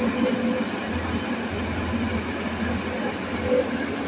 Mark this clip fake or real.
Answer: real